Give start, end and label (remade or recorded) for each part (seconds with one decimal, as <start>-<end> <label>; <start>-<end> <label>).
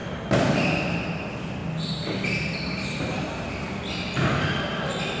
0.0-5.2 recorded